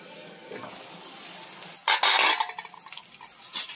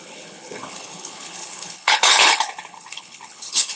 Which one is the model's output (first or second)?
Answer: second